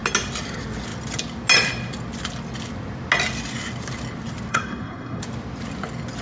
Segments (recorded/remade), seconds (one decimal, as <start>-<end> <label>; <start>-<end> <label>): 0.0-4.5 recorded; 4.5-5.2 remade; 5.2-6.2 recorded